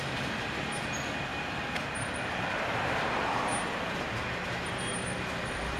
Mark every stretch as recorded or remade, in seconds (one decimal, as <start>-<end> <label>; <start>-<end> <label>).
0.0-5.8 recorded